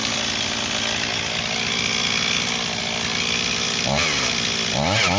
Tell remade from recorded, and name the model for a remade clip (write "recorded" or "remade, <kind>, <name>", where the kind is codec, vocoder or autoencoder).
recorded